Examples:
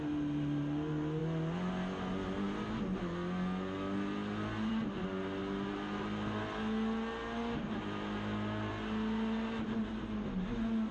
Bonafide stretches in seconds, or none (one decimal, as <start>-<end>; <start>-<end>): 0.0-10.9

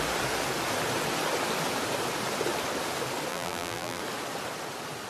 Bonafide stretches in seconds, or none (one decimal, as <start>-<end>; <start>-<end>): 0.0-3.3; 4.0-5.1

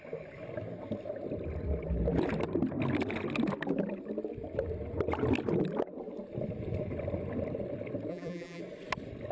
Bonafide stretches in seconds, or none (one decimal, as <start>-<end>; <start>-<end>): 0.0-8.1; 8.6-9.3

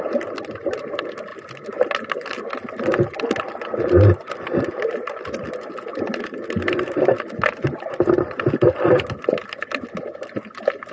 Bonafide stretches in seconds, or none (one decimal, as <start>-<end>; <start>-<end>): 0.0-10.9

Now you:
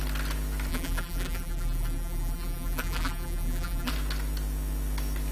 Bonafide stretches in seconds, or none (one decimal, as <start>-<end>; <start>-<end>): 0.0-0.7; 3.9-5.3